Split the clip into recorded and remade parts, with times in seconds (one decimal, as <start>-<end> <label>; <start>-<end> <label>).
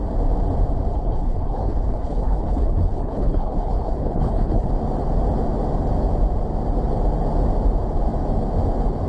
0.0-0.9 recorded; 0.9-4.7 remade; 4.7-9.1 recorded